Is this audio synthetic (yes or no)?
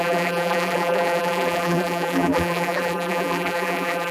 yes